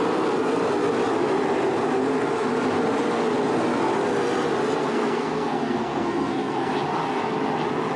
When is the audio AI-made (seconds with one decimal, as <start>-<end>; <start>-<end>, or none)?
4.8-6.7

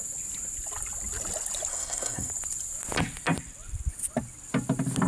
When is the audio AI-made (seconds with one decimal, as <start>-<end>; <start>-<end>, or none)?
1.7-2.3

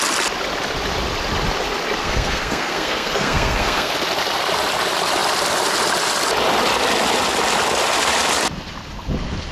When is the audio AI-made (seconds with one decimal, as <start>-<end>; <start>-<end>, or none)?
2.0-3.9

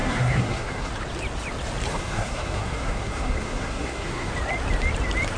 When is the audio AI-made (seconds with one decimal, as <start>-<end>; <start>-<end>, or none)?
0.0-0.9; 1.9-4.3

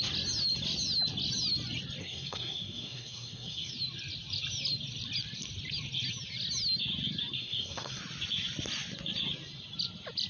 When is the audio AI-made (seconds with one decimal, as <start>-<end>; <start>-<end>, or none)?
2.0-3.7; 7.4-8.0

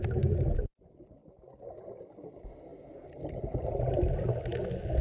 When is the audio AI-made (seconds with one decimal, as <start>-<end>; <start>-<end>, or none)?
none

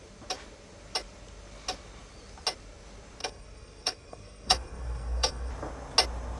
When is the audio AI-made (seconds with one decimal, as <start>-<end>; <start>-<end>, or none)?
3.2-5.5